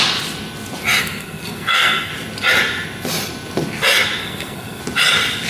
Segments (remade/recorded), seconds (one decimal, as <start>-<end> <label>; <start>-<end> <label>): 0.0-1.0 recorded; 1.0-2.1 remade; 2.1-4.2 recorded; 4.2-4.8 remade; 4.8-5.5 recorded